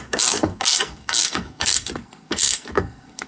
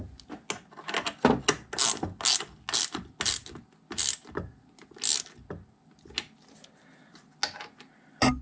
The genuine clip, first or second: second